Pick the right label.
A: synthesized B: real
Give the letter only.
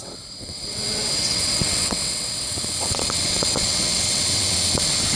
A